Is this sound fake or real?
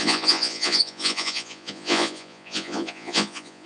fake